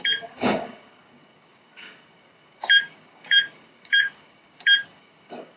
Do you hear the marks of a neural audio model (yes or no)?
yes